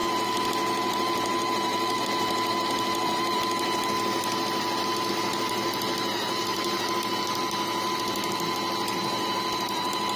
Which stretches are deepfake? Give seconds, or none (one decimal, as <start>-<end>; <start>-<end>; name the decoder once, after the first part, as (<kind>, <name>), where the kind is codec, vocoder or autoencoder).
6.5-7.0 (vocoder, BigVGAN v2)